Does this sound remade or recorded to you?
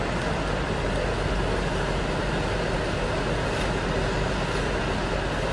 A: recorded